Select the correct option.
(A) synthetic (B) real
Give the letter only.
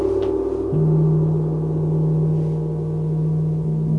B